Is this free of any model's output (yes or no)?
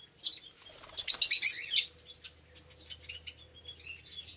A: yes